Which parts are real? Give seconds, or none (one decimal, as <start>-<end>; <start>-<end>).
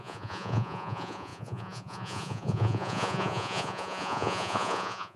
none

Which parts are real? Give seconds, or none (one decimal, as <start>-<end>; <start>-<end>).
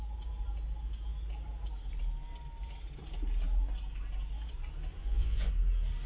0.0-5.0; 5.5-6.1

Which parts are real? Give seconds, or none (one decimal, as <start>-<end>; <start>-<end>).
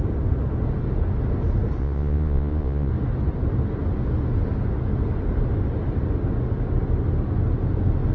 0.0-1.8; 2.9-8.1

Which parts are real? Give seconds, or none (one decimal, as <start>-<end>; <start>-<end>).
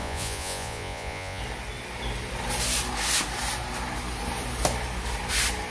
1.4-5.7